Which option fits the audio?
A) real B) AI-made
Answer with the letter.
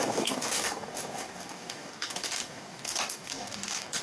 B